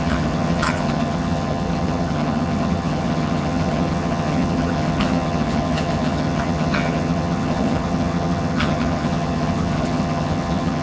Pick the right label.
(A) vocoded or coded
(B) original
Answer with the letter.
A